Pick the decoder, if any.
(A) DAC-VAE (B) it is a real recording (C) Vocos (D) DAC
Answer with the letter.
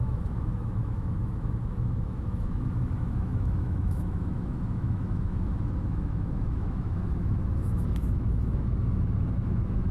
A